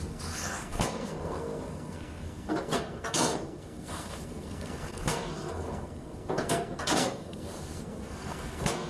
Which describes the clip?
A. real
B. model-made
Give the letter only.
B